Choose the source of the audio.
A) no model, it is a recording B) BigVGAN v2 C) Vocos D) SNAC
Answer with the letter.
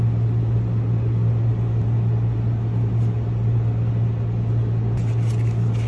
A